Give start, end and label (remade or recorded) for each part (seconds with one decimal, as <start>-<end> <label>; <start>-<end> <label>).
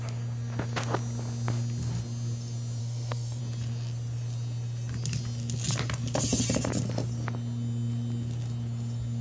0.0-2.8 recorded; 2.8-3.4 remade; 3.4-9.2 recorded